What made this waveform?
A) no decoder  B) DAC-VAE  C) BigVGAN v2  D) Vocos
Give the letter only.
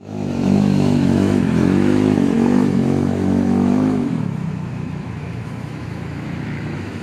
B